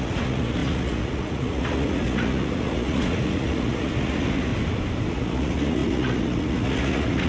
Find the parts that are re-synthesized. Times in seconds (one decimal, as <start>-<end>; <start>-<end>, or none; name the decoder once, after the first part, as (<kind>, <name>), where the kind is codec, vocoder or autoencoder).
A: 0.0-4.5 (vocoder, Vocos); 5.1-7.3